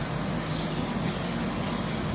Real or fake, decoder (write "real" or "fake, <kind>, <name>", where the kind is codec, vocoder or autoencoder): real